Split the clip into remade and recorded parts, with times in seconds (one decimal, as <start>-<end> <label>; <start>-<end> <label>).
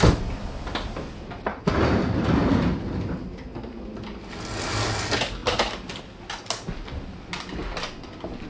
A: 0.0-1.5 recorded; 1.5-2.7 remade; 2.7-8.5 recorded